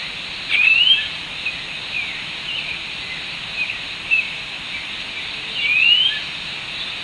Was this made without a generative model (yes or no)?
yes